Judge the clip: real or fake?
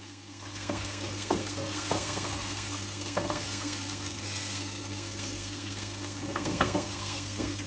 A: fake